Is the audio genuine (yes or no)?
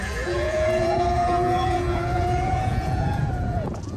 no